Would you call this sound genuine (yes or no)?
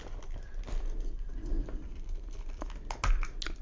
yes